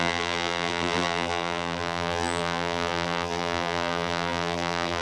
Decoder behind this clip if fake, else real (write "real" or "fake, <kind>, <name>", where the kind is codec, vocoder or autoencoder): fake, vocoder, BigVGAN v2